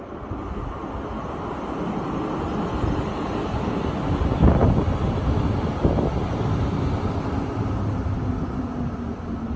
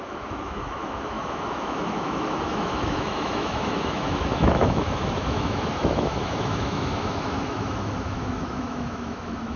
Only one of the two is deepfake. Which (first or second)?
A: second